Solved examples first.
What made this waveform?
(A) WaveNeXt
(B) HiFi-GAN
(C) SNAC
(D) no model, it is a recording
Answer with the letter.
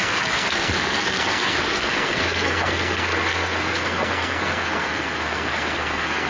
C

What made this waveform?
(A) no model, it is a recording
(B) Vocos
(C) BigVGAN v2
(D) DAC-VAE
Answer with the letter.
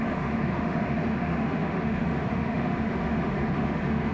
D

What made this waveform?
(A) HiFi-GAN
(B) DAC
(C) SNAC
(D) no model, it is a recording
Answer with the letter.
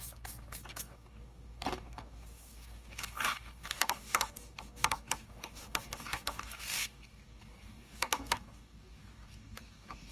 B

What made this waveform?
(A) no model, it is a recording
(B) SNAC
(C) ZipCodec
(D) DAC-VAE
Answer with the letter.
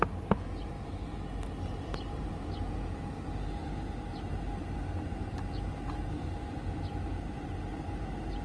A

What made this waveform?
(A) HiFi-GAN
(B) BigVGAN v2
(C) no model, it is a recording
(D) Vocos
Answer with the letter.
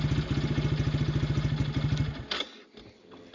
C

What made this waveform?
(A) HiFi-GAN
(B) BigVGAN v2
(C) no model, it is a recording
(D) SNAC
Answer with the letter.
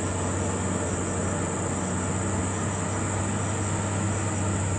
C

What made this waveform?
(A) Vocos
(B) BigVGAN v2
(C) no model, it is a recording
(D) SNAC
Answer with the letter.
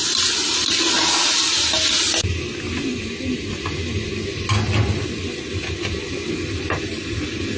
C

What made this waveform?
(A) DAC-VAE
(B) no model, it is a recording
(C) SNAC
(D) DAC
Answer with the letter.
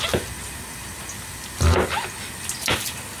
B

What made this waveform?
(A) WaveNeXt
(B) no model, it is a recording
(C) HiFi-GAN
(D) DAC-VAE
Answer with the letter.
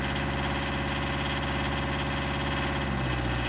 B